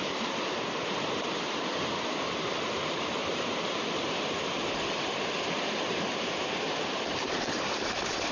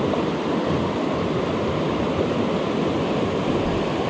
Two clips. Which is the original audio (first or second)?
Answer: second